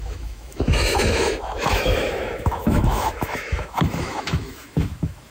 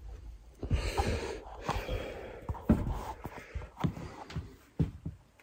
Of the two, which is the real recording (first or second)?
second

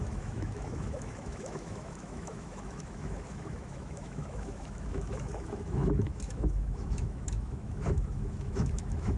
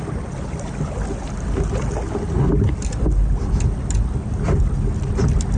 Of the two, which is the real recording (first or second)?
second